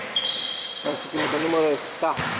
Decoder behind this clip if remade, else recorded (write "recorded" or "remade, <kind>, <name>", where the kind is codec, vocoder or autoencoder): remade, vocoder, BigVGAN v2